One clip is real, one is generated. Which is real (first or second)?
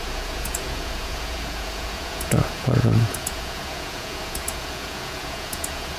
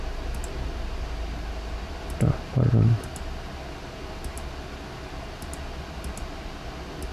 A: second